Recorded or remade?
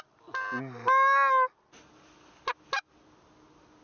recorded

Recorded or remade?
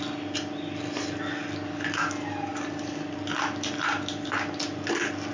recorded